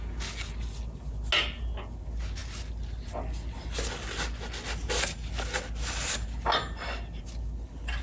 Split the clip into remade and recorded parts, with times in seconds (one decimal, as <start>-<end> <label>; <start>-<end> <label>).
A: 0.0-8.0 recorded